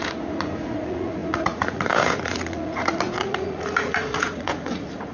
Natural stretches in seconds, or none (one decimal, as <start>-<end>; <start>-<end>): none